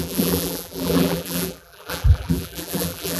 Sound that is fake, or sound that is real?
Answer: fake